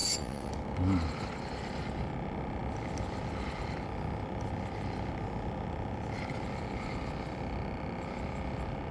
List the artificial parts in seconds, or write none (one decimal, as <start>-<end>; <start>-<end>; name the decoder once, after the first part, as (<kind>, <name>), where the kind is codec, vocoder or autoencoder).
0.0-0.5 (vocoder, WaveNeXt)